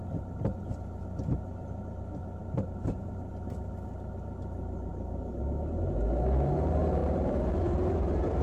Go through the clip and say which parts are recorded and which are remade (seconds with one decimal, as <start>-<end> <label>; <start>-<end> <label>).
0.0-2.4 recorded; 2.4-3.3 remade; 3.3-7.0 recorded; 7.0-8.4 remade